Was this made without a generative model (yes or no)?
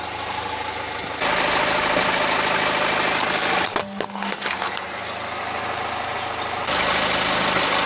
yes